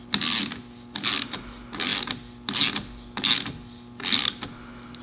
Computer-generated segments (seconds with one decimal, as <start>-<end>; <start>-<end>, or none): none